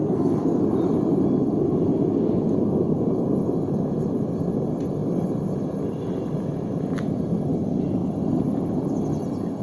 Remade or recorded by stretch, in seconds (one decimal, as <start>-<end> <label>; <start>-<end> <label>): 0.0-0.6 remade; 0.6-9.6 recorded